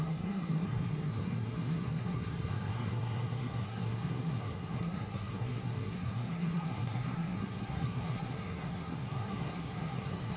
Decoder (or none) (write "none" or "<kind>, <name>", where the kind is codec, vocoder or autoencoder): codec, SNAC